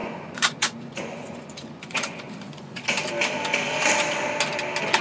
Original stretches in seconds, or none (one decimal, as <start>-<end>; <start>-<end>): 2.8-5.0